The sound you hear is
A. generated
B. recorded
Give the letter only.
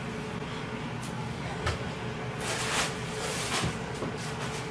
B